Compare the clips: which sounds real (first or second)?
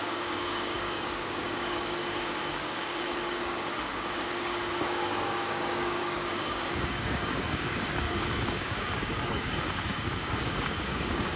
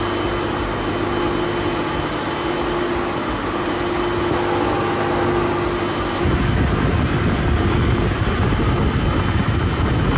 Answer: second